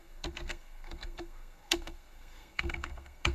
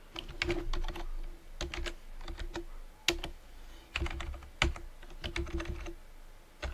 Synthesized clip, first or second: first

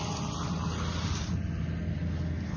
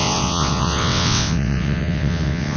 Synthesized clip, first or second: second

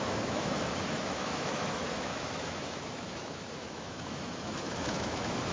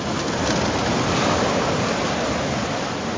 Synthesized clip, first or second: first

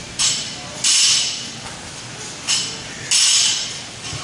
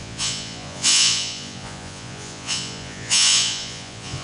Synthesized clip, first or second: second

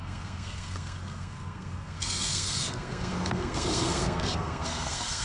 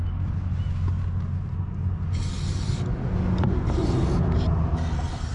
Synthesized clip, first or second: first